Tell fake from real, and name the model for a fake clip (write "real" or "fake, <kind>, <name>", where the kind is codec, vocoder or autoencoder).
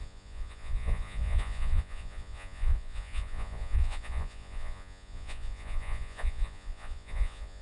fake, vocoder, Vocos